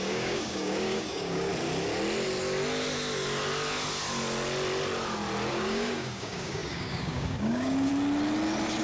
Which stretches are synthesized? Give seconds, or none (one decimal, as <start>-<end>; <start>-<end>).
0.0-1.5; 5.5-7.9